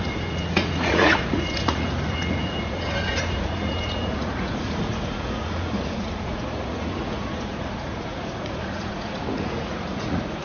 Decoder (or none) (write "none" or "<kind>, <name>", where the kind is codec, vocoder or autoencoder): vocoder, Vocos